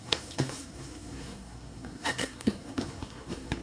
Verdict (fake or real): fake